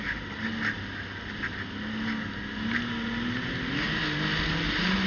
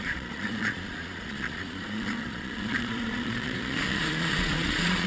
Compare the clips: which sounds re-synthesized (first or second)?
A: second